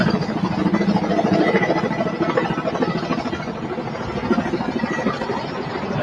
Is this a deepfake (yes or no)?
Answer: no